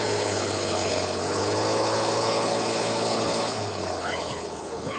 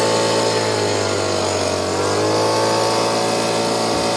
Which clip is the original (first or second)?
second